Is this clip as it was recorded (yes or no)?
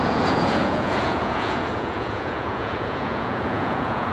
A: no